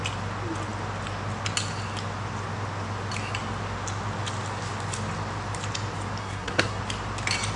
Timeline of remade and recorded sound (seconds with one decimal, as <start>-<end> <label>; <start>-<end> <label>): 0.0-6.2 recorded; 6.2-6.8 remade; 6.8-7.6 recorded